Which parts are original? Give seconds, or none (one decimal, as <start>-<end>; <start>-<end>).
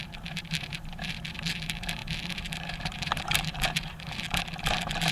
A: none